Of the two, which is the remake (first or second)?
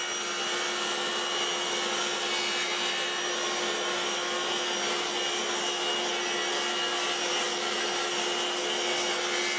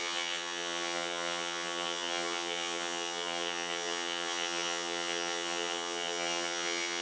second